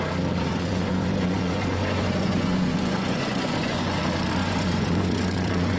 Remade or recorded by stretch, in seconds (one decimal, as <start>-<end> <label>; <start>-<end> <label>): 0.0-0.5 recorded; 0.5-4.0 remade; 4.0-4.4 recorded; 4.4-5.8 remade